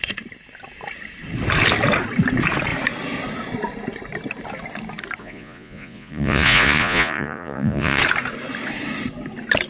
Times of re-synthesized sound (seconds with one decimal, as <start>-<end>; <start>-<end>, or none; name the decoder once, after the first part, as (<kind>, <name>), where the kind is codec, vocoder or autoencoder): 5.2-8.0 (vocoder, Vocos)